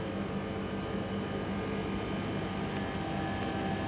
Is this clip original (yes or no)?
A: yes